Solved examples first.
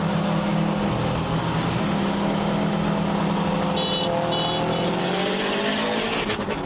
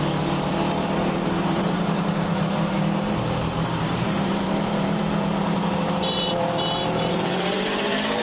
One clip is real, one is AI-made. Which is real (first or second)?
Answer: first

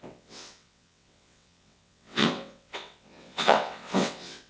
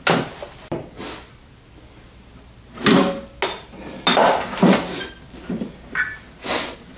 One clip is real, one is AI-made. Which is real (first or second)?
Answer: second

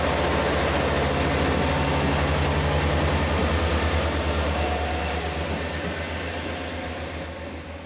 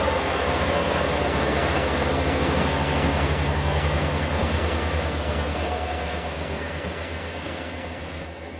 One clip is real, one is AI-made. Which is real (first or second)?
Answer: first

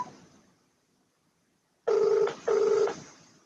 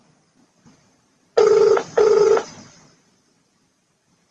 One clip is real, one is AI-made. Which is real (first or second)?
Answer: first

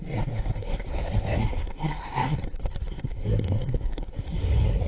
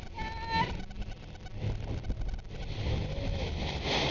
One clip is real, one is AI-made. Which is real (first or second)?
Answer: second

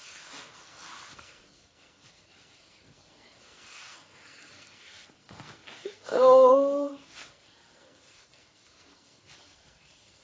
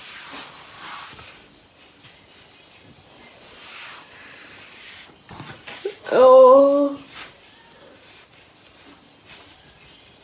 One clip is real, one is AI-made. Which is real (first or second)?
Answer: second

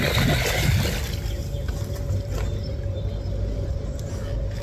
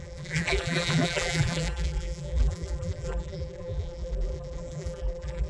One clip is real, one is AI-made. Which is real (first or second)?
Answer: first